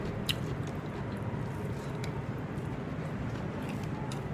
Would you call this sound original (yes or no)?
yes